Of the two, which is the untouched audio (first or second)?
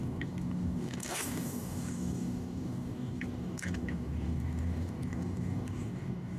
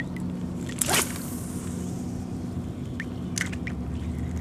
second